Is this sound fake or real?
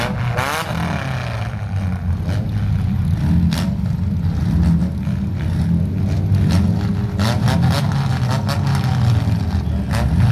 real